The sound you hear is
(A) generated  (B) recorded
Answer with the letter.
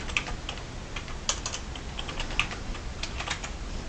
B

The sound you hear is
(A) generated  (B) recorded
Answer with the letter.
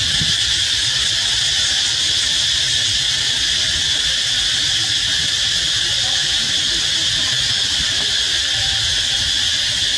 B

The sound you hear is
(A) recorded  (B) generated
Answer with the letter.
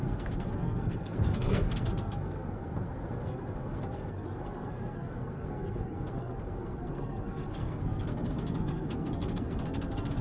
B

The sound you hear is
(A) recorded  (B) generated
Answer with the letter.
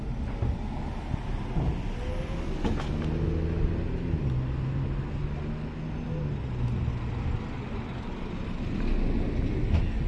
A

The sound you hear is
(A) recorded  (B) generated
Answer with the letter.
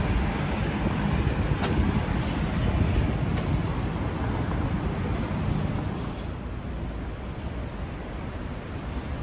A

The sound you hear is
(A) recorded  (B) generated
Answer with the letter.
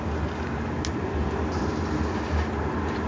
A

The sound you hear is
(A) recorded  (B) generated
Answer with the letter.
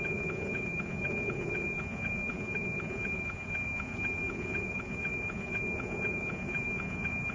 B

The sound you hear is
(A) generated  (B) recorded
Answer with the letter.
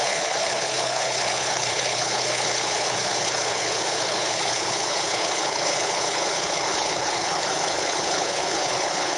A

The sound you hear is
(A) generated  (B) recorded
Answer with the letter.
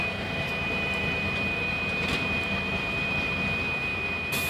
A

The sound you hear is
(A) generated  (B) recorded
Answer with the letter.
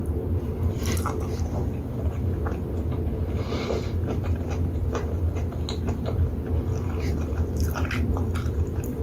B